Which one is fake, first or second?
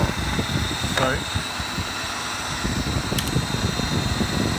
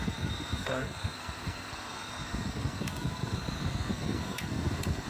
second